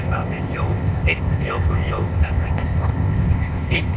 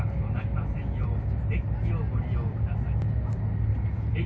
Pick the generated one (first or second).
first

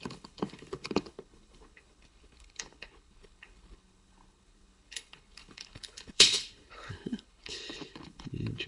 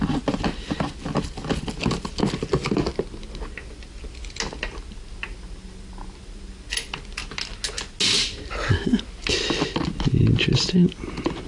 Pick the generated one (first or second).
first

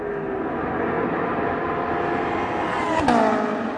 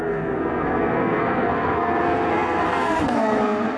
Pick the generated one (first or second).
second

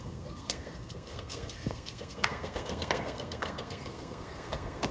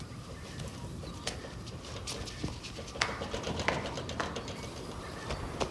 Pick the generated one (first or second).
first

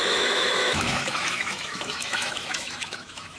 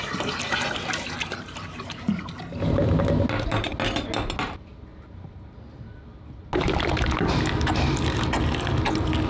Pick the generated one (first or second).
first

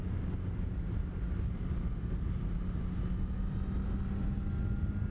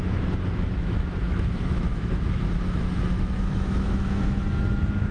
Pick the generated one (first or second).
second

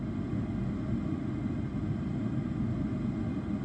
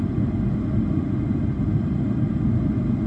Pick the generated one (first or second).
second